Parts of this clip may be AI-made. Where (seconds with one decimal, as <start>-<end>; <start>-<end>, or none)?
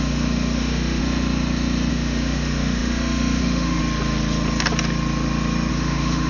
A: 0.0-1.0; 1.9-3.8; 5.7-6.3